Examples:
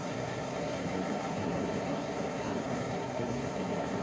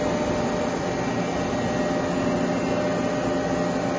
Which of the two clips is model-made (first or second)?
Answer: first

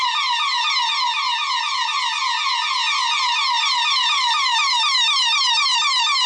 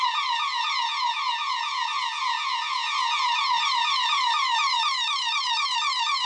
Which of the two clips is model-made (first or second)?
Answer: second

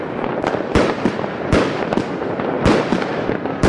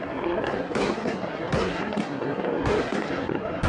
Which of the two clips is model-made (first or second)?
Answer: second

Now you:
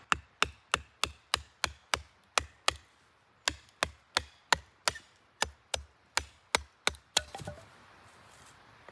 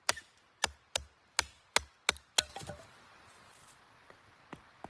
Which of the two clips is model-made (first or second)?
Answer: second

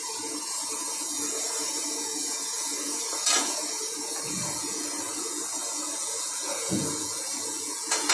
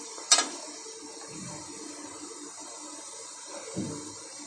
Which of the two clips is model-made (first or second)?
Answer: first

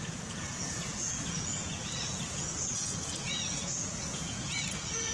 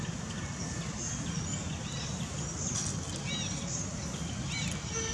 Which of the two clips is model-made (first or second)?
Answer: first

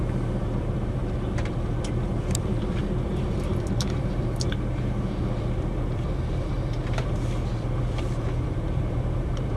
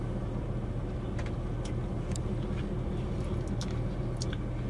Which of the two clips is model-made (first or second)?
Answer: first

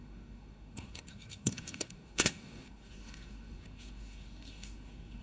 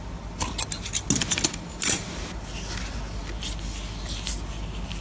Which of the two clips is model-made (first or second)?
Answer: first